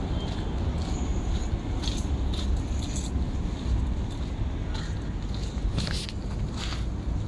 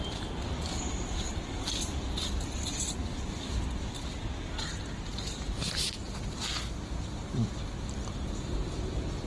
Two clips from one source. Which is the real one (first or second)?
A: first